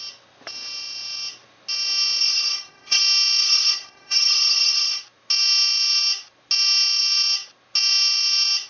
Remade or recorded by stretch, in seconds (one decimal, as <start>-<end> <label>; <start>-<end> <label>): 0.0-2.2 recorded; 2.2-3.0 remade; 3.0-3.4 recorded; 3.4-5.0 remade; 5.0-8.7 recorded